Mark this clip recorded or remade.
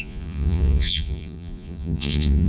remade